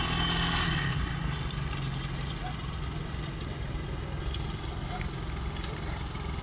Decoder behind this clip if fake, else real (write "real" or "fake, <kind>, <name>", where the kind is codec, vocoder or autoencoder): real